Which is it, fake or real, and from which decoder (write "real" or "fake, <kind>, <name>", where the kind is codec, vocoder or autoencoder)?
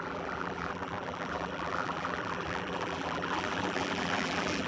fake, vocoder, BigVGAN v2